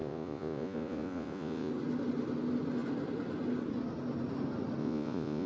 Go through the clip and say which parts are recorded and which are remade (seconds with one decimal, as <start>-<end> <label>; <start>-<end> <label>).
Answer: 0.0-1.7 remade; 1.7-4.8 recorded; 4.8-5.5 remade